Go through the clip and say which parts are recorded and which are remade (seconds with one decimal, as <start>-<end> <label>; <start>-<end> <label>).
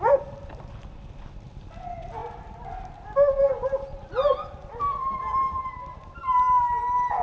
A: 0.0-7.2 recorded